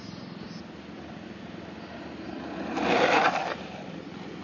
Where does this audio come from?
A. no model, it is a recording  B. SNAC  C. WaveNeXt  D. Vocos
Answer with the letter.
A